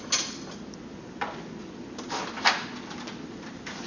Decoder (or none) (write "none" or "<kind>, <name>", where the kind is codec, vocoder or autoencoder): none